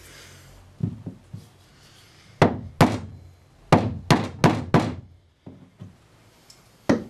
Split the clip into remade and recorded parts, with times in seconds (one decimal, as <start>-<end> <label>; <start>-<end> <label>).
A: 0.0-7.1 recorded